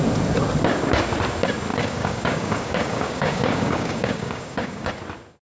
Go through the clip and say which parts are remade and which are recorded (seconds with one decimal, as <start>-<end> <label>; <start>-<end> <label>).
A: 0.0-1.7 recorded; 1.7-4.9 remade; 4.9-5.4 recorded